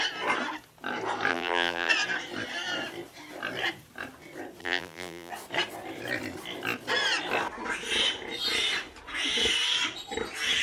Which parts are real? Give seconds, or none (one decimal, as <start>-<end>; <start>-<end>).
0.0-1.3; 1.9-4.6; 5.3-10.6